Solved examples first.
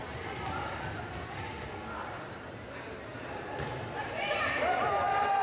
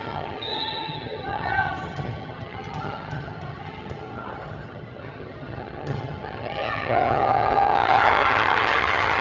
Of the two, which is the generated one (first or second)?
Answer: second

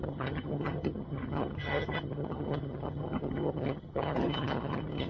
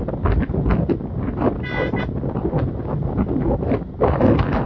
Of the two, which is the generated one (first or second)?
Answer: first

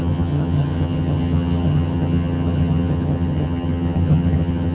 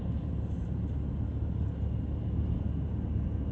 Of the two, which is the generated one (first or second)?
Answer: first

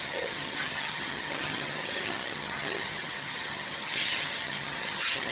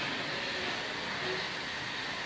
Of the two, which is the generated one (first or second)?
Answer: first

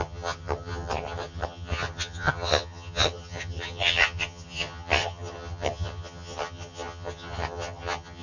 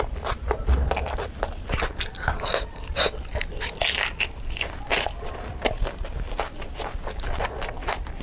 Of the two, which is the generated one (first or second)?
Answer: first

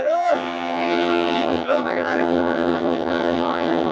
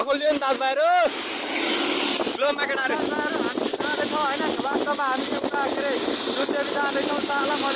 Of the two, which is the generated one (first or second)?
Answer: first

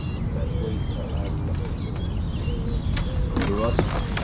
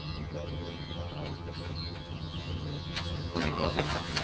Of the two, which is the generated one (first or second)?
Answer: second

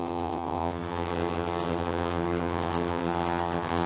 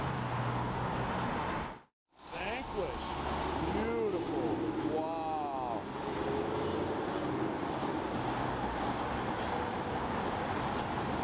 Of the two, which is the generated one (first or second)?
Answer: first